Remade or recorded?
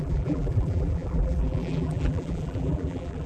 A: remade